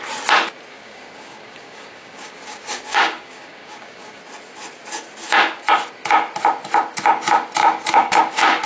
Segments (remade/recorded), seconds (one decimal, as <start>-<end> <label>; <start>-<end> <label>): 0.0-0.7 recorded; 0.7-4.2 remade; 4.2-7.6 recorded; 7.6-8.7 remade